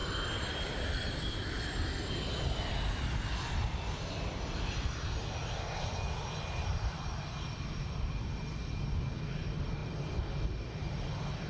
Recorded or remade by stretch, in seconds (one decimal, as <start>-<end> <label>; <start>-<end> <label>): 0.0-11.5 recorded